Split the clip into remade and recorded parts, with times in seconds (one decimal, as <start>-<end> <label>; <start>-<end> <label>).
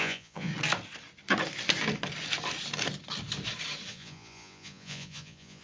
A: 0.0-0.5 remade; 0.5-3.9 recorded; 3.9-5.6 remade